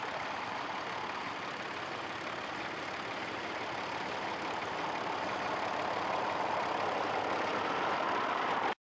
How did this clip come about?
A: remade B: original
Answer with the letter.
A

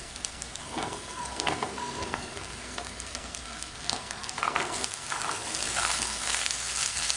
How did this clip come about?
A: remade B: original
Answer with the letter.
A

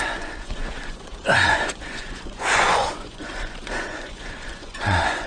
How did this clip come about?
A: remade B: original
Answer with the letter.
A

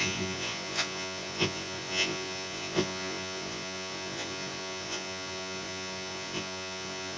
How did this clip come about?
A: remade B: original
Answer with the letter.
A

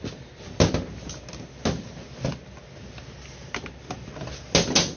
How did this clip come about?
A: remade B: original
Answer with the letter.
B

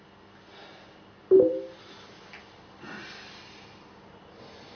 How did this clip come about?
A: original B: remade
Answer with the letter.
A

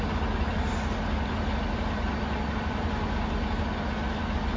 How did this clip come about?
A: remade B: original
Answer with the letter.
B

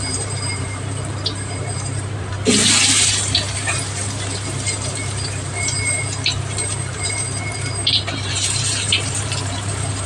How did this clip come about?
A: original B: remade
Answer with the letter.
B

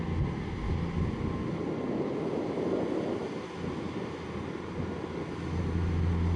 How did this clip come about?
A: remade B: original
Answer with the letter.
B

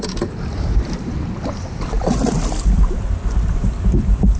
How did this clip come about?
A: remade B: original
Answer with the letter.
B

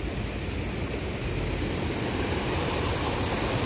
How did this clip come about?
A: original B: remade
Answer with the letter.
A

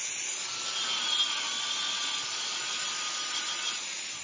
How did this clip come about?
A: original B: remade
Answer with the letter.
A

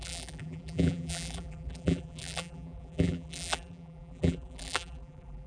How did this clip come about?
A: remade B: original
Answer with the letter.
A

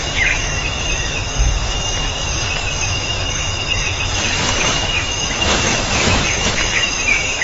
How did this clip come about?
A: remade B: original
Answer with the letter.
A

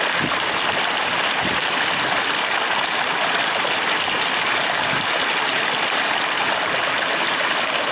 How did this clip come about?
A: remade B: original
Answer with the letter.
B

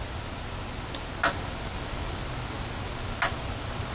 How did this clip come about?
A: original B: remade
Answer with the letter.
A